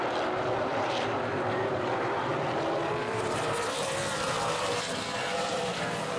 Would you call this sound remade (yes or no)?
yes